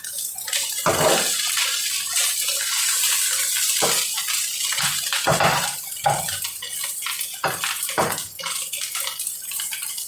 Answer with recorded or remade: recorded